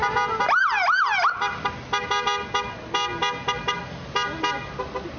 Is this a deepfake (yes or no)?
no